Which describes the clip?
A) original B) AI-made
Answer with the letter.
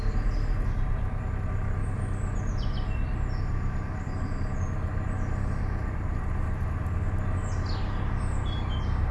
A